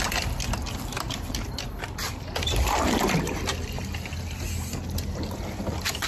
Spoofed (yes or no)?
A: no